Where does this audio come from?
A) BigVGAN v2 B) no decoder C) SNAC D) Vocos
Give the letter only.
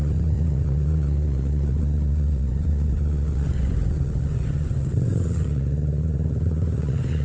D